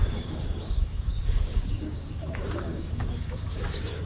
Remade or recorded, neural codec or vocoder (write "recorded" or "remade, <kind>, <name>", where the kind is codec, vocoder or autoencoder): remade, codec, DAC